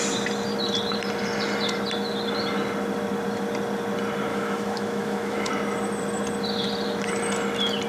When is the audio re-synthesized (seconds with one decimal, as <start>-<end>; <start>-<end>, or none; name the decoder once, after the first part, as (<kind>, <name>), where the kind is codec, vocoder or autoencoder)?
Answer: 4.3-5.5 (autoencoder, DAC-VAE)

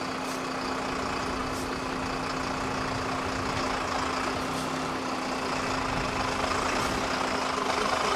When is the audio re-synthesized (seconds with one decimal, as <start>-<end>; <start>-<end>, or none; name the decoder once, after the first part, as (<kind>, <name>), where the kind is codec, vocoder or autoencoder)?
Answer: none

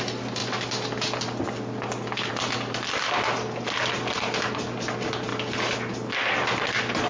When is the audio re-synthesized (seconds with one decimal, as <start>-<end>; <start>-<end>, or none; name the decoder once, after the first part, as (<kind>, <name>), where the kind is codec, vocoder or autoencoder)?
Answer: none

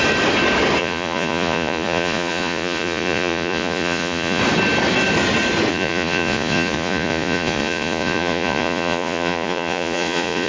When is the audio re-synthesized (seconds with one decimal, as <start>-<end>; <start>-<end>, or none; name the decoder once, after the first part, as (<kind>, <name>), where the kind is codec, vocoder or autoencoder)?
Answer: 0.8-4.4 (vocoder, Vocos); 5.7-10.5

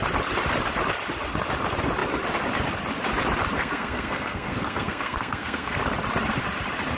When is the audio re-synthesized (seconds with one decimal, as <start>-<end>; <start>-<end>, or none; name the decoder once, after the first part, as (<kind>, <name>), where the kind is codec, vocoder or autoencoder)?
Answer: 3.6-5.8 (codec, SNAC)